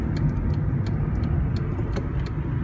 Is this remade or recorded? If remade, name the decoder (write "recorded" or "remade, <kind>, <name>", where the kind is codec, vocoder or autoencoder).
recorded